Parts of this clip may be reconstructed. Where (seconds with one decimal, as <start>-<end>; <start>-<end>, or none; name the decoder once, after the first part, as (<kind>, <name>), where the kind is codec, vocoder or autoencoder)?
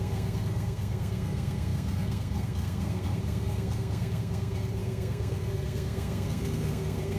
0.0-7.2 (codec, SNAC)